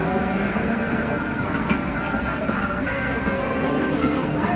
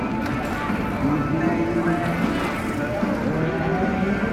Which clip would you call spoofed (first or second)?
first